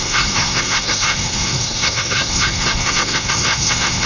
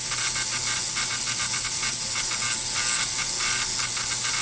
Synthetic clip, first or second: first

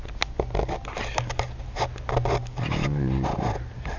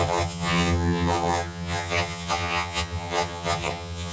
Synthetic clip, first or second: second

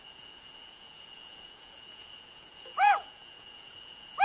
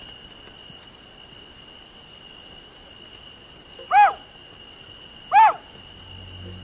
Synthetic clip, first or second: first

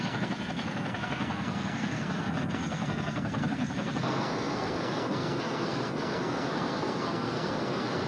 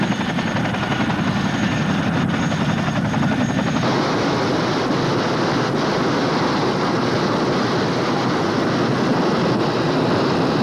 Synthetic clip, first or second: first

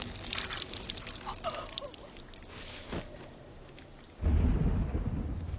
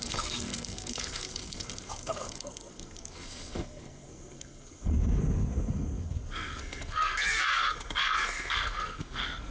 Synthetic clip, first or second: second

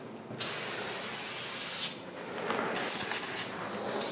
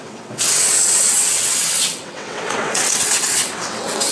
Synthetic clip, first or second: second